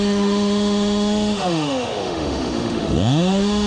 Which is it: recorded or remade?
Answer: remade